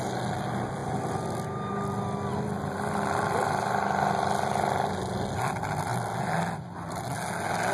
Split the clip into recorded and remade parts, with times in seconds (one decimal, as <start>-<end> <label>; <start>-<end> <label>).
0.0-7.7 recorded